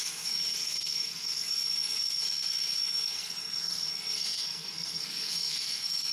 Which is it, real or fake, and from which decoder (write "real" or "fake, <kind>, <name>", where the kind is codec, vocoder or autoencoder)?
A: fake, codec, SNAC